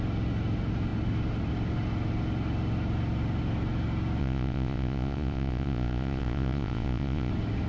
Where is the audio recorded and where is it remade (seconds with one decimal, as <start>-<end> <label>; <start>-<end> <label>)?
0.0-4.2 recorded; 4.2-7.3 remade; 7.3-7.7 recorded